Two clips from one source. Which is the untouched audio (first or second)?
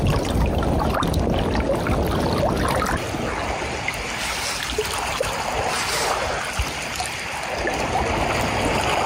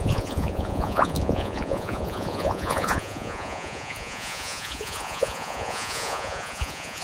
first